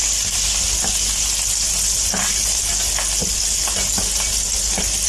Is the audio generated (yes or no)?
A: no